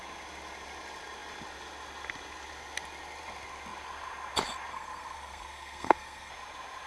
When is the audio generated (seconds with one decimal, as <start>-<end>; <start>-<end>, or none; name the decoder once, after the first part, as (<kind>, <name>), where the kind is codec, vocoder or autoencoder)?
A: 4.7-6.3 (codec, SNAC)